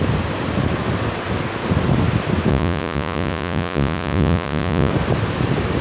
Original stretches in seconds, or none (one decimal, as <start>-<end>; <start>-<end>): 0.0-2.5; 4.9-5.8